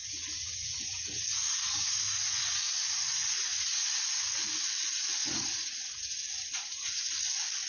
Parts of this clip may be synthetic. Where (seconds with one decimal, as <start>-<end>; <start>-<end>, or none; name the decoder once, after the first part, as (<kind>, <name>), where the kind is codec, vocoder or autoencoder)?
0.0-1.2 (vocoder, Vocos); 3.2-4.0; 5.2-7.0